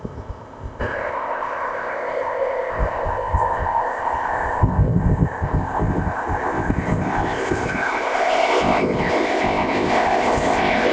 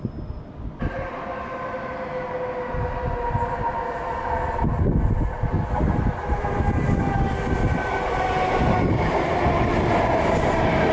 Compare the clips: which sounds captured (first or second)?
second